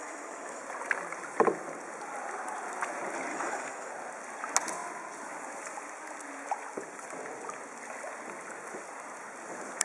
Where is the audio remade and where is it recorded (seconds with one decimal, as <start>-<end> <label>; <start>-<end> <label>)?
0.0-0.6 remade; 0.6-3.3 recorded; 3.3-3.9 remade; 3.9-9.8 recorded